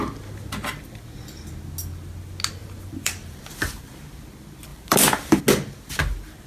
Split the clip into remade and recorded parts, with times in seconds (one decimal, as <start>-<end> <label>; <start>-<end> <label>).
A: 0.0-2.6 recorded; 2.6-4.0 remade; 4.0-4.7 recorded; 4.7-5.4 remade; 5.4-6.5 recorded